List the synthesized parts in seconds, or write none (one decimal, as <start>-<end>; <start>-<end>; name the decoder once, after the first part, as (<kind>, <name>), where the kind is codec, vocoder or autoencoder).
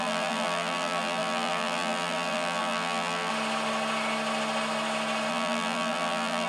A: 0.0-3.3 (vocoder, BigVGAN v2); 5.3-6.5